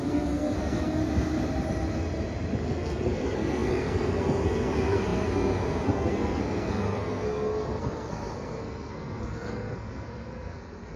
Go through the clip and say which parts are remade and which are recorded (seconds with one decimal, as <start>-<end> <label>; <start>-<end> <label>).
0.0-1.0 remade; 1.0-2.7 recorded; 2.7-11.0 remade